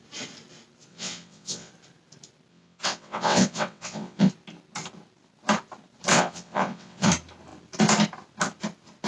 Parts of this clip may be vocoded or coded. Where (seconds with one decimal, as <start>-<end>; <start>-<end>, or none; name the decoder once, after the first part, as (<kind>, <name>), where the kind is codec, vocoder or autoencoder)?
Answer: 0.9-1.7 (vocoder, WaveNeXt); 2.5-4.3; 6.1-7.1